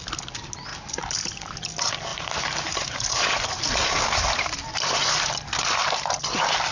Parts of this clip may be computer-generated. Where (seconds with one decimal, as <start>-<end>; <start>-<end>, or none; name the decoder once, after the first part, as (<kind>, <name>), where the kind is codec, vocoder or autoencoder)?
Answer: 0.7-1.4 (vocoder, BigVGAN v2); 2.1-3.1